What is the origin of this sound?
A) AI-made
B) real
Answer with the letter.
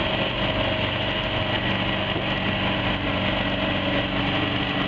B